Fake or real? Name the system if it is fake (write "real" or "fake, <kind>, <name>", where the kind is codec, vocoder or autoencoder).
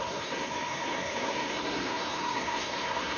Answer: fake, codec, SNAC